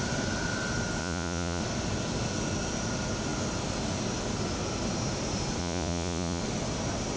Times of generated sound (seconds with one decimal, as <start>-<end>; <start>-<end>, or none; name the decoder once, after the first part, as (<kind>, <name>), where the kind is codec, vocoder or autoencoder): 1.0-1.6 (vocoder, Vocos); 5.6-6.4